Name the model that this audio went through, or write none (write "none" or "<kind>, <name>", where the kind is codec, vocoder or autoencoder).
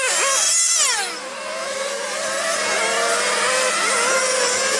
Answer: none